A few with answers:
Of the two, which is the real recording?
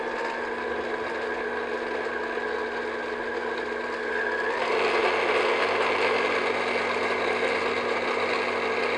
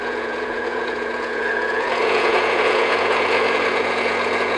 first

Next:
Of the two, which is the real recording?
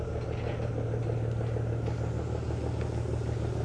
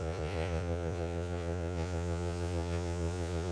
first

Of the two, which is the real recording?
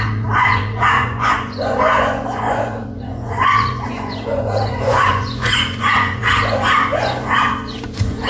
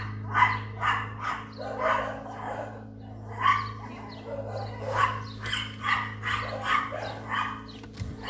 second